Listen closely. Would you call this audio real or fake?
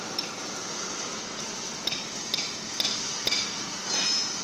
real